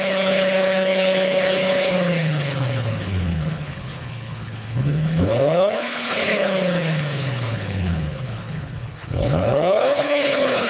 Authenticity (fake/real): fake